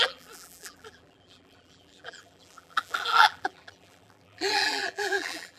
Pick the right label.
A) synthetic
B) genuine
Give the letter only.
A